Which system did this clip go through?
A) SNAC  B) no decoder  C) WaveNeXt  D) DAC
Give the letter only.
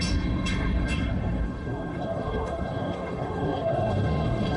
A